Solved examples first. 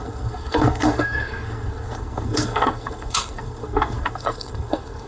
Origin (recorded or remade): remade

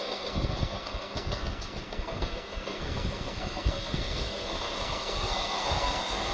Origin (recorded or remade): remade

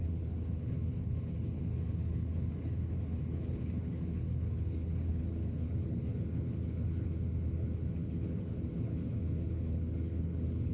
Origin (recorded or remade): remade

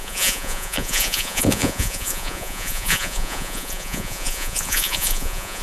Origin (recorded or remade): remade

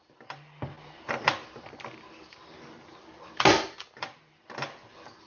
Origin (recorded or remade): recorded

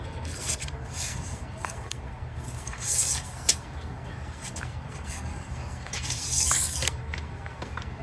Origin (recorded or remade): remade